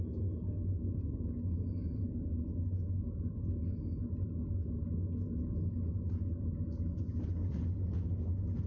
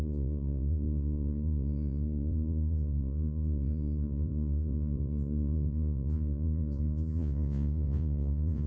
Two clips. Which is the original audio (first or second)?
first